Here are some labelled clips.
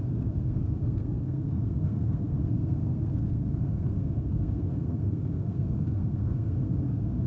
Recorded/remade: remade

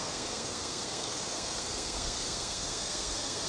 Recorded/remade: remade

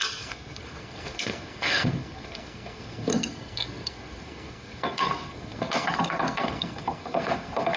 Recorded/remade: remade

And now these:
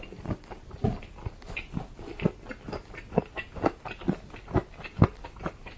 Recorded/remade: recorded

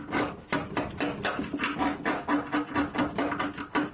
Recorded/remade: recorded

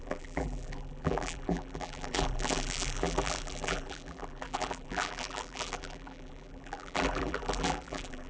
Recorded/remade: remade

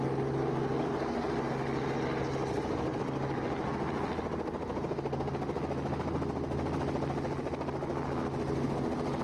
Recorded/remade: recorded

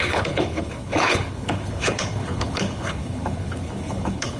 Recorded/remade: remade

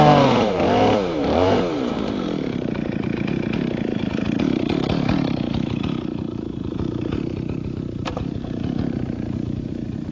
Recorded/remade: remade